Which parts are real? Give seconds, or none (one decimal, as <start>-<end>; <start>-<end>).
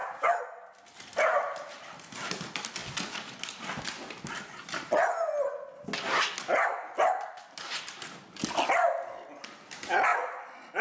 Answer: 0.0-10.8